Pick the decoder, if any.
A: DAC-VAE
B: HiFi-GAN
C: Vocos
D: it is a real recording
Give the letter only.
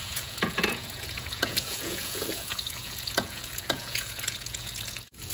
C